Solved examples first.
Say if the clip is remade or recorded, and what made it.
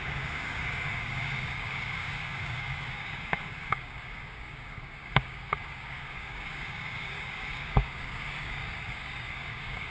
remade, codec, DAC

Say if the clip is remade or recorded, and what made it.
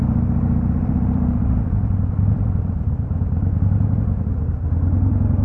remade, vocoder, BigVGAN v2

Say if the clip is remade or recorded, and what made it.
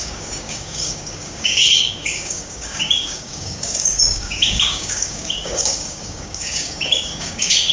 remade, codec, DAC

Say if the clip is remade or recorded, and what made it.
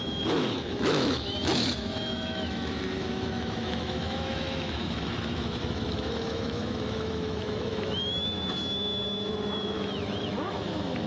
remade, autoencoder, DAC-VAE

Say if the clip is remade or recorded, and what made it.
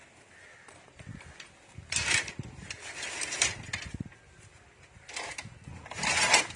recorded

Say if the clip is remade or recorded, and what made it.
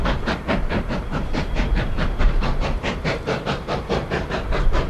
remade, vocoder, BigVGAN v2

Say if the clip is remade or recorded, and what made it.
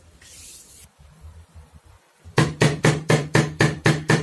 remade, vocoder, BigVGAN v2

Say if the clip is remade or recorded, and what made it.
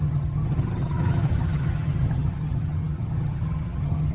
remade, vocoder, HiFi-GAN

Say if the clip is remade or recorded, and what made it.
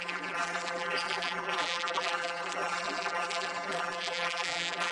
remade, vocoder, BigVGAN v2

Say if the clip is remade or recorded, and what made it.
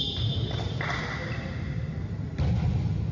recorded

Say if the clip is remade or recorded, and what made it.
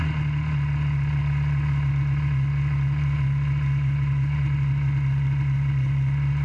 recorded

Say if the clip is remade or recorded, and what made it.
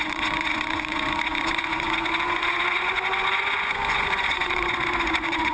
remade, vocoder, Vocos